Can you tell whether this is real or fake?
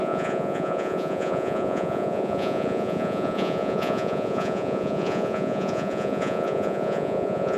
fake